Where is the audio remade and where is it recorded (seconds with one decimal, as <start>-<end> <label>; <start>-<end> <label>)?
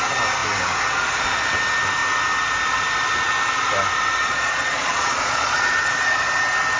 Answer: 0.0-4.2 recorded; 4.2-6.3 remade; 6.3-6.8 recorded